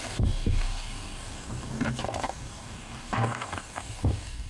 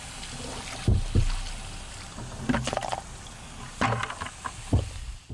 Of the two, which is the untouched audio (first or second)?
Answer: second